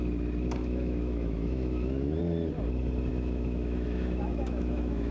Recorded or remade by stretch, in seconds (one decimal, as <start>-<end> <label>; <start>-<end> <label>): 0.0-0.6 recorded; 0.6-2.2 remade; 2.2-3.1 recorded; 3.1-5.1 remade